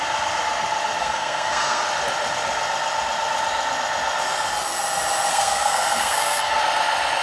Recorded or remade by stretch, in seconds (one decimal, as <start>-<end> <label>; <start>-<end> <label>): 0.0-1.0 recorded; 1.0-1.8 remade; 1.8-5.3 recorded; 5.3-6.6 remade; 6.6-7.2 recorded